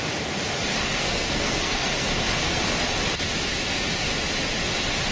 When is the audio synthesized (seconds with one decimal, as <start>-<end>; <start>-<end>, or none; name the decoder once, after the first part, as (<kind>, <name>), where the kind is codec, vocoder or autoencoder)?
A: 0.7-2.6 (codec, SNAC)